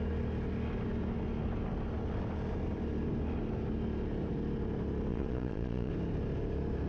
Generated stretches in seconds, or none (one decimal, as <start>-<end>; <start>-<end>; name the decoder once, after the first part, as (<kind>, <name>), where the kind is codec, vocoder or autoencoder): 5.1-5.9 (vocoder, Vocos)